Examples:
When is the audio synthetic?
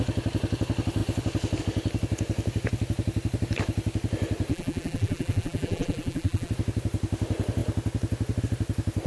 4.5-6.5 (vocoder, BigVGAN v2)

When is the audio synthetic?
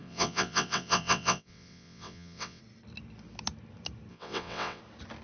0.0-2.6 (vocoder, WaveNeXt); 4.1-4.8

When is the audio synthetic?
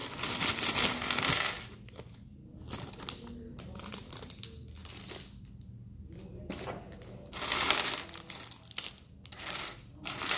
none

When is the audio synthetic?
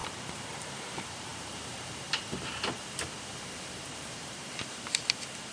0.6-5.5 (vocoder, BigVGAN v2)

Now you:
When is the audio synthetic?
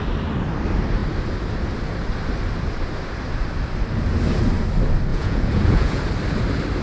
5.1-6.0 (vocoder, Vocos)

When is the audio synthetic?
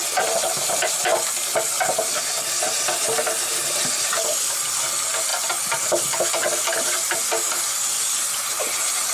none